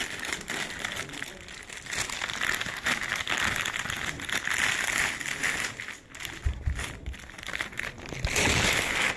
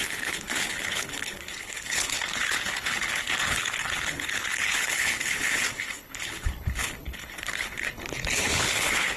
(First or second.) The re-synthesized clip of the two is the second